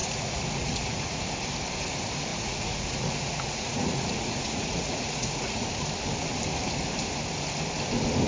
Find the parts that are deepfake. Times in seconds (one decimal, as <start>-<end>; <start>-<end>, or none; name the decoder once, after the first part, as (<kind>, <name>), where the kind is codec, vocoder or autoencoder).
0.0-1.2 (vocoder, Vocos); 2.3-5.7